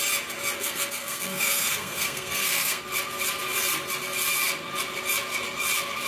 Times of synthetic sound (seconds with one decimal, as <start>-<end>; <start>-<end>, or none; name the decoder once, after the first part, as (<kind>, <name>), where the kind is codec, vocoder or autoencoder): 0.6-2.8 (codec, SNAC)